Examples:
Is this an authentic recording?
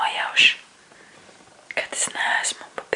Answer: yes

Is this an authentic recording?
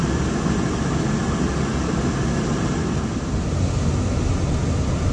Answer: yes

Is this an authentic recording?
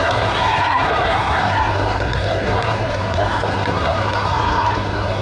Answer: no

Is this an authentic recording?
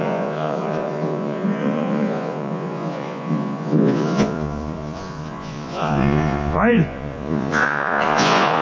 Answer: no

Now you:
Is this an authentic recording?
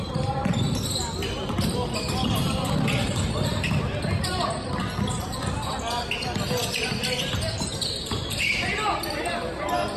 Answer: yes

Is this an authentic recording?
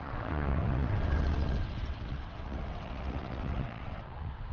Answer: no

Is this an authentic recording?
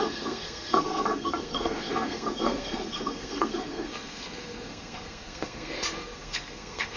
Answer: no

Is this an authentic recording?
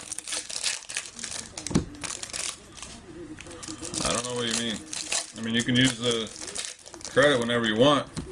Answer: yes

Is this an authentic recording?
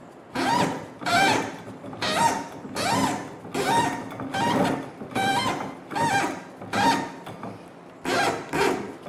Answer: yes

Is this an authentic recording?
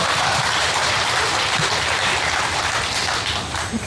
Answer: no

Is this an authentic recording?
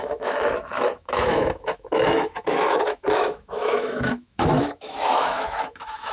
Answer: no